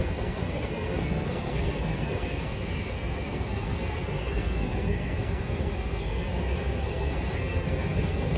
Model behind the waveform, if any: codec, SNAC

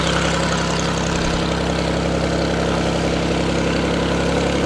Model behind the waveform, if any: none